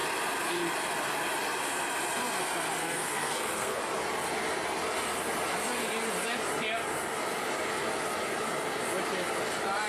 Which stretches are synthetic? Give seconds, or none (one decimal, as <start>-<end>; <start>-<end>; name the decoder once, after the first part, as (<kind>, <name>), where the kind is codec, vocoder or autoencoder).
2.8-3.8 (codec, SNAC)